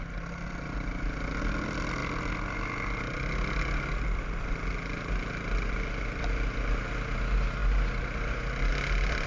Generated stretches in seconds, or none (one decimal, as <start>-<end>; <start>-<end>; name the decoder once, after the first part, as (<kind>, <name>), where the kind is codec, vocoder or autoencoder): none